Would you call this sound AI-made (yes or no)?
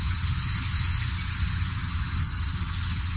yes